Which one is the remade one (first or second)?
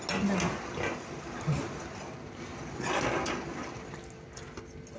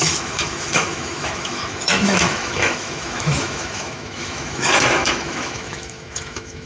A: second